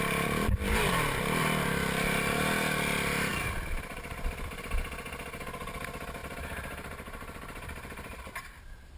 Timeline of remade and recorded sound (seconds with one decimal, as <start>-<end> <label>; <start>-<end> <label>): 0.0-3.3 recorded; 3.3-4.6 remade; 4.6-6.2 recorded; 6.2-8.2 remade; 8.2-9.0 recorded